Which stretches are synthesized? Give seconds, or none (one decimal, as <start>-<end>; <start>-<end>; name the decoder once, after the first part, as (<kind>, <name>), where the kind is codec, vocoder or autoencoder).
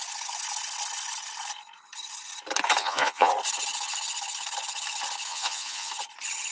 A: 2.8-3.3 (vocoder, Vocos); 5.3-5.9